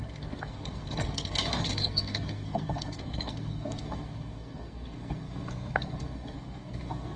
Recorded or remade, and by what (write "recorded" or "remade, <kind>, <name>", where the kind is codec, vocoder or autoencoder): remade, codec, SNAC